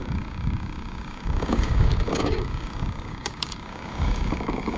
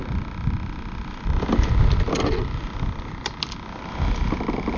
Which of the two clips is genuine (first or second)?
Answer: second